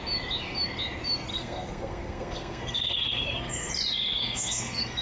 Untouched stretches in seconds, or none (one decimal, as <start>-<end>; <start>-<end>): 0.0-1.3; 3.7-4.2

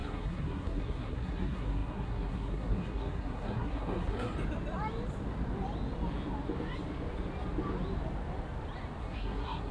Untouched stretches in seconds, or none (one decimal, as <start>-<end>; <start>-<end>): 4.3-9.0

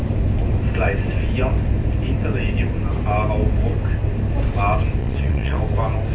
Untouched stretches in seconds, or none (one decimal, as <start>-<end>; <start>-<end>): 0.0-5.0; 5.6-6.1

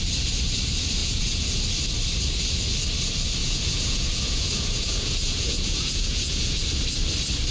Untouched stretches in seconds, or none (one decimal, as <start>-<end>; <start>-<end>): 0.0-1.0; 1.6-3.4; 6.6-7.5

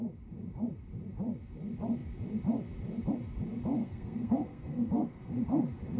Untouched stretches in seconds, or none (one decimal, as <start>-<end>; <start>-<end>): 0.0-3.8; 5.3-6.0